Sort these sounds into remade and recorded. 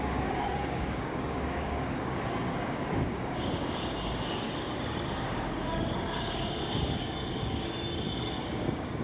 remade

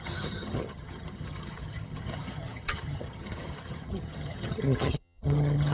remade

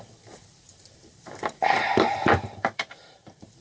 remade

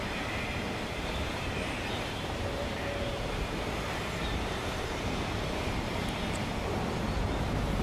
remade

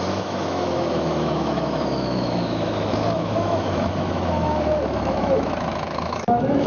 remade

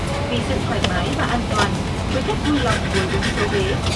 recorded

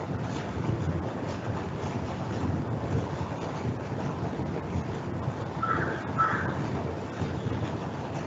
recorded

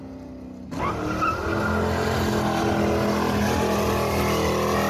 recorded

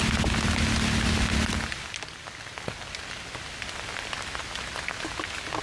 recorded